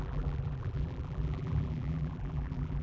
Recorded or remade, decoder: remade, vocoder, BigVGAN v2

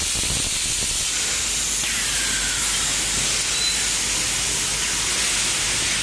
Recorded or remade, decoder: recorded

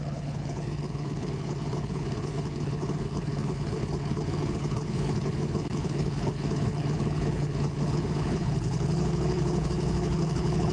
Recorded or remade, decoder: remade, codec, HILCodec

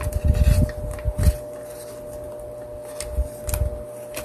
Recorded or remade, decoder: recorded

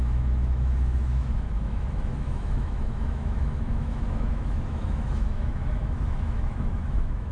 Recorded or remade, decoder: remade, autoencoder, DAC-VAE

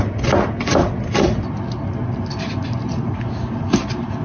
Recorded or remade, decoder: recorded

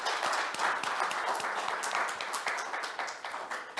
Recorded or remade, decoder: recorded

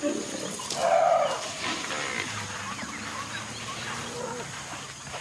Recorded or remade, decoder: recorded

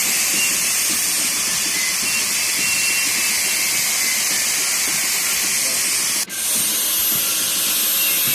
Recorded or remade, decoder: recorded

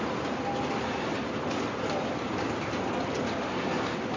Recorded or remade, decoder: recorded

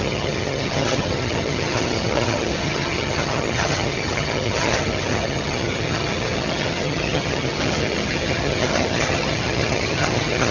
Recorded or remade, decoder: remade, vocoder, HiFi-GAN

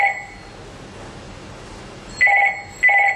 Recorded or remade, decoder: recorded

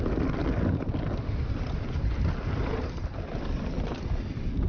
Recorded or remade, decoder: recorded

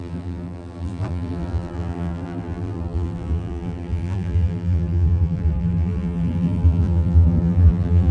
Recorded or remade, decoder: remade, vocoder, BigVGAN v2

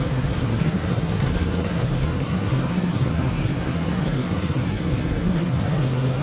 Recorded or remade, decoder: remade, codec, SNAC